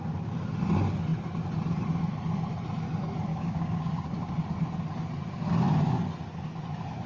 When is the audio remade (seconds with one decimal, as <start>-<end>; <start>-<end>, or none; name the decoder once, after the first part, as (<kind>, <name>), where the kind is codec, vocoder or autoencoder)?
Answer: 3.3-4.3 (codec, DAC)